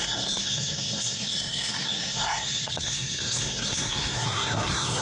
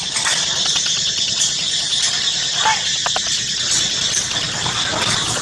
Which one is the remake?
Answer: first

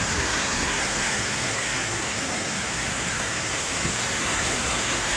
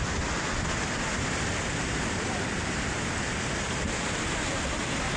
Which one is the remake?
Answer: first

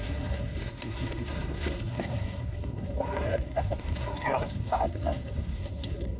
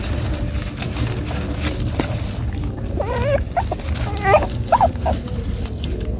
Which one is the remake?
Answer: first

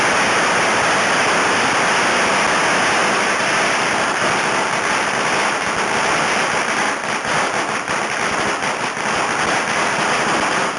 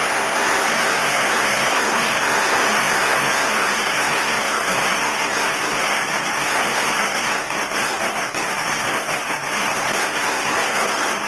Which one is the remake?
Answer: second